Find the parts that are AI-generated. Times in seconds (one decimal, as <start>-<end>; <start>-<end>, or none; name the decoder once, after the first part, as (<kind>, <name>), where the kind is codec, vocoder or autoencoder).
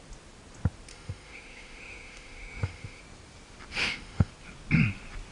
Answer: 0.9-3.0 (autoencoder, DAC-VAE); 3.8-4.3